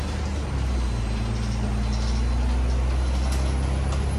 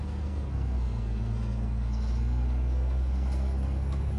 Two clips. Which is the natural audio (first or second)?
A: first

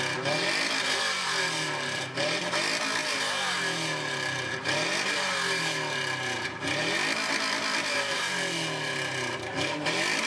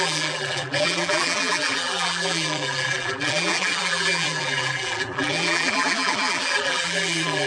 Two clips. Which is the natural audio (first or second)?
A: first